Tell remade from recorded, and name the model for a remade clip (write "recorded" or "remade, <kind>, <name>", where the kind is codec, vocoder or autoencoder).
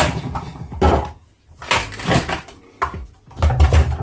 recorded